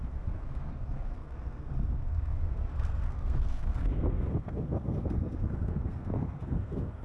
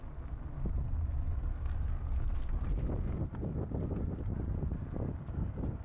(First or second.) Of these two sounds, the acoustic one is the second